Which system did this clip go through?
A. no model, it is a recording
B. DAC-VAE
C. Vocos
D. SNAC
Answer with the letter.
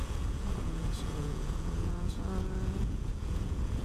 C